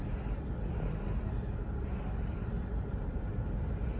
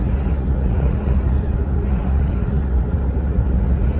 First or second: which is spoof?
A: second